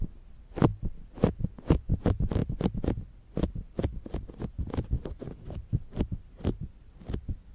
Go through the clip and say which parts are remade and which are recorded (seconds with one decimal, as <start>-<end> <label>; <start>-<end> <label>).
0.0-7.5 recorded